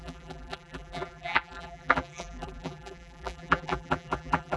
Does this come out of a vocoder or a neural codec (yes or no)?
yes